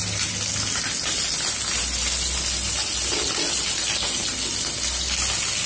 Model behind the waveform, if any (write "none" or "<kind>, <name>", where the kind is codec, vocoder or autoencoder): none